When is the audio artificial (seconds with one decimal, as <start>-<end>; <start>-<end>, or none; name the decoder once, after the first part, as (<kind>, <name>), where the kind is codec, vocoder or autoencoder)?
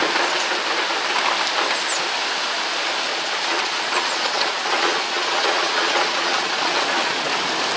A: 3.1-7.3 (vocoder, Vocos)